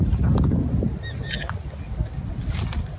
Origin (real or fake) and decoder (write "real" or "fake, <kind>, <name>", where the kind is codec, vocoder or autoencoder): real